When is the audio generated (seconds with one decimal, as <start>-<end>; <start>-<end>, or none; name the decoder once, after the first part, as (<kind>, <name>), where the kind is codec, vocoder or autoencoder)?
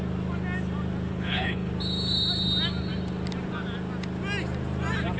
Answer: 1.1-1.7 (codec, HILCodec)